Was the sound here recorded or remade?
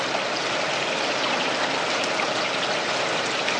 recorded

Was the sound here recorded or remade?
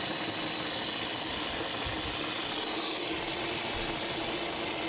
recorded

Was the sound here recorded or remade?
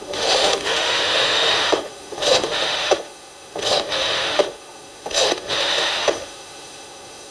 remade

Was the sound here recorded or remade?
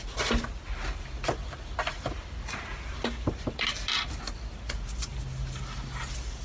recorded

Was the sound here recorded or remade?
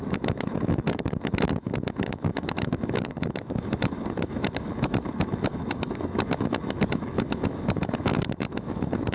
remade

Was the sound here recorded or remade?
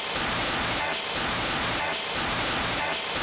recorded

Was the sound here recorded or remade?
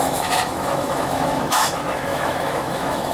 remade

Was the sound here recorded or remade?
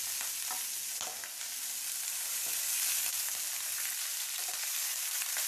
recorded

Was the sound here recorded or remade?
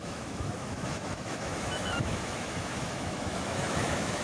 remade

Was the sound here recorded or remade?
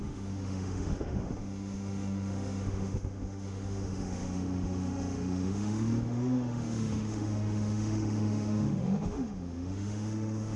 remade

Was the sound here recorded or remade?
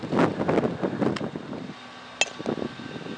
recorded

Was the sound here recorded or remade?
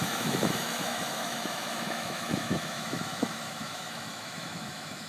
remade